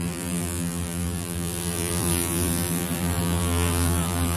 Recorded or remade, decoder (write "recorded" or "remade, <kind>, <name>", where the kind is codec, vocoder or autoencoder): remade, vocoder, BigVGAN v2